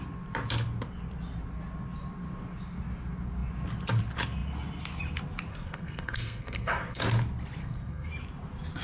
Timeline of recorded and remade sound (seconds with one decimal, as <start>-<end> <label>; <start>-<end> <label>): 0.0-5.5 recorded; 5.5-7.0 remade; 7.0-7.6 recorded; 7.6-8.1 remade; 8.1-8.8 recorded